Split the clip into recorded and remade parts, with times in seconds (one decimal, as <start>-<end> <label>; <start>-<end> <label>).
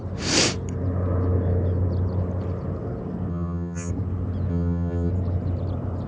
0.0-3.3 recorded; 3.3-3.9 remade; 3.9-4.5 recorded; 4.5-5.1 remade; 5.1-6.1 recorded